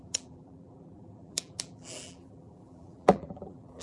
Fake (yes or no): yes